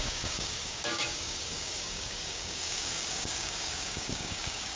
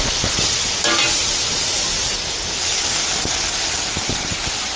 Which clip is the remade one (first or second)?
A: first